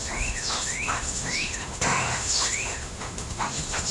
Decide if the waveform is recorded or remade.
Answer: remade